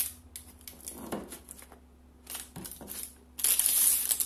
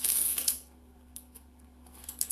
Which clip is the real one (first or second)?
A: first